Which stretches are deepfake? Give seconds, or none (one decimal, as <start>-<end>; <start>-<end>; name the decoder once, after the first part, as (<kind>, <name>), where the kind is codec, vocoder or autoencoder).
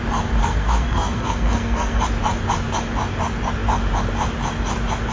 0.4-2.0 (codec, SNAC)